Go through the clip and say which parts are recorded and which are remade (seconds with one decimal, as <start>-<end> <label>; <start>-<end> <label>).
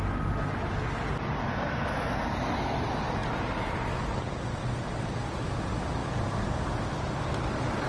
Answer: 0.0-7.9 recorded